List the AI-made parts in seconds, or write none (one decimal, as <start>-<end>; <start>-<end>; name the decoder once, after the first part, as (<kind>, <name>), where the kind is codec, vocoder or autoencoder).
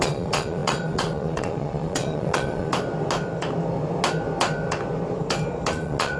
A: 0.0-2.7 (vocoder, Vocos); 5.7-6.2